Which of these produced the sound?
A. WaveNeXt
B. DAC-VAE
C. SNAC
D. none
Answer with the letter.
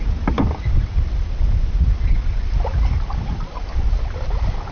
D